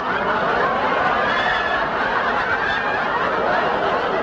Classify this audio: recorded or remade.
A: recorded